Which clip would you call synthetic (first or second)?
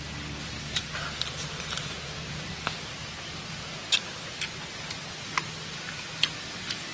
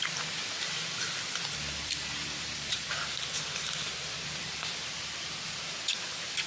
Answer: second